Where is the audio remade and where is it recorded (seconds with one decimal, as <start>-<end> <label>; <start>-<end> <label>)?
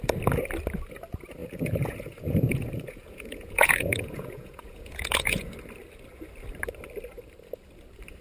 0.0-1.4 recorded; 1.4-5.5 remade; 5.5-8.2 recorded